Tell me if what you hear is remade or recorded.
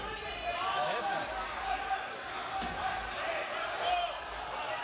remade